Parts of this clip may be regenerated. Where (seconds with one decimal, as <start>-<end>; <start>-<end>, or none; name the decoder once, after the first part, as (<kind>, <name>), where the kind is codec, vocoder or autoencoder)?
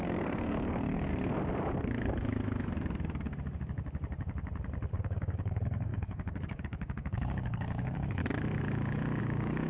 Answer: 0.0-1.1 (codec, DAC); 4.9-8.2; 9.2-9.7